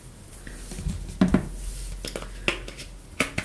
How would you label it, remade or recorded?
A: recorded